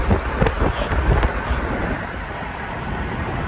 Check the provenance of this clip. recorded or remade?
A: remade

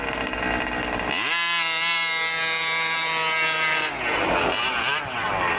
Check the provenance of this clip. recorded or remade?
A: recorded